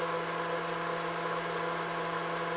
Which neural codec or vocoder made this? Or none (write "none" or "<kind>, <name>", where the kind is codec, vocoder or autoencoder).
none